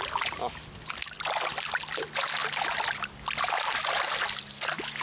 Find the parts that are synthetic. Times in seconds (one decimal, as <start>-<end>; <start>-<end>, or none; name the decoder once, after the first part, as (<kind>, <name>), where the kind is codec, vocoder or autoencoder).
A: none